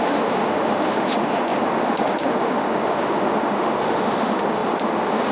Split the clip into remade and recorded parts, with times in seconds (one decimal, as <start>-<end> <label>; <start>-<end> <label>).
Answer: 0.0-5.3 remade